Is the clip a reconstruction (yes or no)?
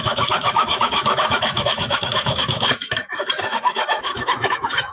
yes